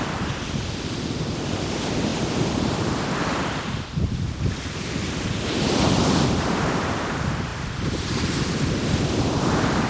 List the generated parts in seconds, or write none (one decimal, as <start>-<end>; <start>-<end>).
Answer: none